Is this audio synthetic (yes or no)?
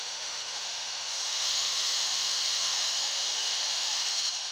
yes